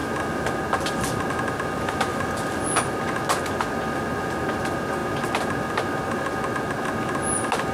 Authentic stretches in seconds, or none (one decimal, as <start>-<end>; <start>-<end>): 0.0-2.1; 3.1-7.7